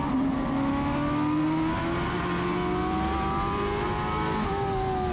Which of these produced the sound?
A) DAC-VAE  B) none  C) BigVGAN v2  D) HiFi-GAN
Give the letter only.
B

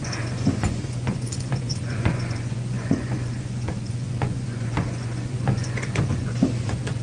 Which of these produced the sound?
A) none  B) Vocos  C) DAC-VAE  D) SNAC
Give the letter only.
B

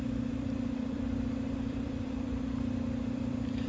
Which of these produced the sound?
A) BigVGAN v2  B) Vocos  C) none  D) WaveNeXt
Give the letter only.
A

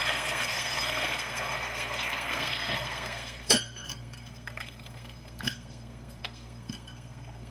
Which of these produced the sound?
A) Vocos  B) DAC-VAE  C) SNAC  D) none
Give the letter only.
C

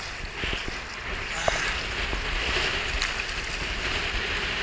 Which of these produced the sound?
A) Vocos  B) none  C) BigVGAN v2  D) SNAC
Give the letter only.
B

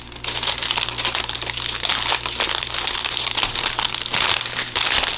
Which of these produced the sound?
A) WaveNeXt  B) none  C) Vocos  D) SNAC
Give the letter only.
B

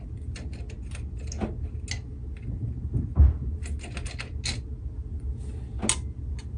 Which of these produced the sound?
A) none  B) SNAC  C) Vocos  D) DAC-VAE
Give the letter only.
A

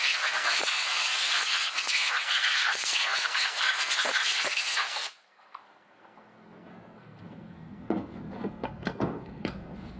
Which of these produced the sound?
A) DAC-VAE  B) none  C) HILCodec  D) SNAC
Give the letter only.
D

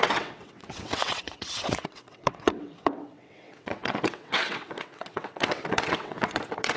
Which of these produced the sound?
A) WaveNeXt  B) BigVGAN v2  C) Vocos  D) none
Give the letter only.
A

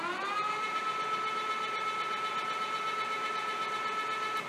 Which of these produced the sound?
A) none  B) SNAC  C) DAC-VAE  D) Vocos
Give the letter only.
A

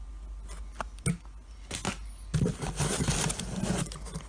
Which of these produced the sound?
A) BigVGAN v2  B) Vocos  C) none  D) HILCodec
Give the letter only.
C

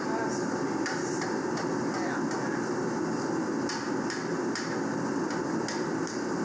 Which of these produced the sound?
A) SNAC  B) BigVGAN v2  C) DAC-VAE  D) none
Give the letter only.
D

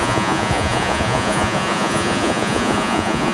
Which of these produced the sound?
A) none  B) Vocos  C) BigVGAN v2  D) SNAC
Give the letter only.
B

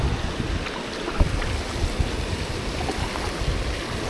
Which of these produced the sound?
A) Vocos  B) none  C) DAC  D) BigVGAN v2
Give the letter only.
B